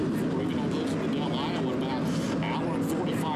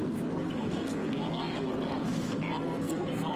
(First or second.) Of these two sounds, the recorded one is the first